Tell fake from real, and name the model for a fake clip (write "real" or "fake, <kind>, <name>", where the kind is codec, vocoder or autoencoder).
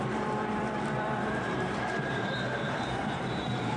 fake, vocoder, BigVGAN v2